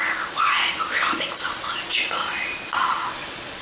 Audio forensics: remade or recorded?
remade